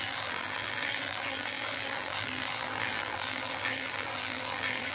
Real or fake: fake